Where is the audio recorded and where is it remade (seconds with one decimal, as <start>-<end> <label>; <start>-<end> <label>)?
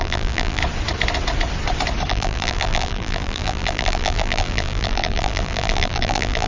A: 0.0-0.6 remade; 0.6-2.1 recorded; 2.1-6.5 remade